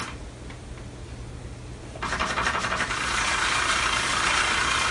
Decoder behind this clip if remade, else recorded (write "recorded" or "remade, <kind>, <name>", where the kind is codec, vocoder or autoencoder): recorded